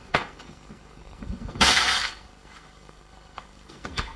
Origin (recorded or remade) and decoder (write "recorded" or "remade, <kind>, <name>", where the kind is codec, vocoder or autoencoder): remade, codec, SNAC